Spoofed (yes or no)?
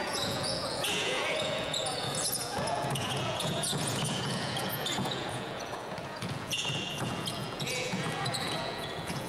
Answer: yes